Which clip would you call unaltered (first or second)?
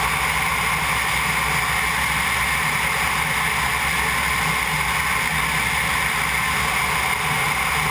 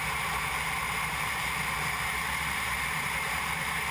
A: first